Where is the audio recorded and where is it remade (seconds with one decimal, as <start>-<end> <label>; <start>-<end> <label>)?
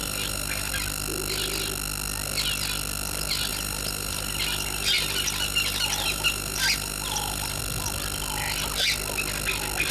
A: 0.0-0.7 remade; 0.7-3.5 recorded; 3.5-7.6 remade; 7.6-9.9 recorded